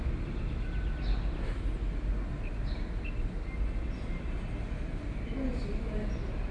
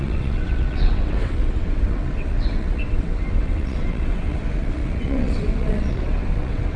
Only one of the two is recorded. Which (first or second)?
first